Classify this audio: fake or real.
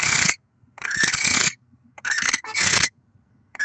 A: fake